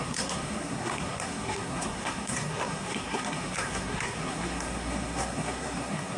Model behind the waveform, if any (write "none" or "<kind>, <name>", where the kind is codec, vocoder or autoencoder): codec, SNAC